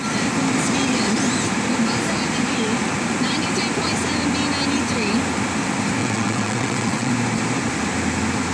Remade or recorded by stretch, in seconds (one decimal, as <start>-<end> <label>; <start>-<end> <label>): 0.0-6.0 recorded; 6.0-7.1 remade; 7.1-8.5 recorded